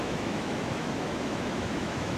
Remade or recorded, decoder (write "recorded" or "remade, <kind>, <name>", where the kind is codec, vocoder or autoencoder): remade, autoencoder, DAC-VAE